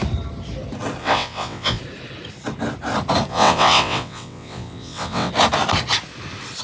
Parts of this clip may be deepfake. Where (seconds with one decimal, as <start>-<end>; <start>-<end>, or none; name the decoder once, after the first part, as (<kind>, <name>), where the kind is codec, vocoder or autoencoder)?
1.0-1.8 (vocoder, WaveNeXt); 3.3-5.3